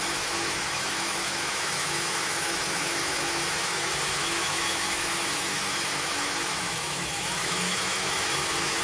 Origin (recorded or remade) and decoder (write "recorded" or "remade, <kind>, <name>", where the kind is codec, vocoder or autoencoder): remade, autoencoder, DAC-VAE